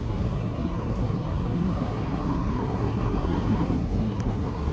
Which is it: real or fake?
fake